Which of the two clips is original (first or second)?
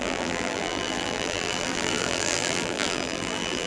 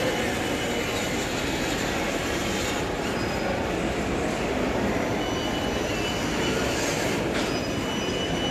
second